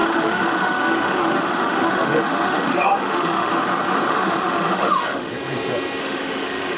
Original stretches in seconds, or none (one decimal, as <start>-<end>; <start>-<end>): 3.5-4.1; 5.3-6.0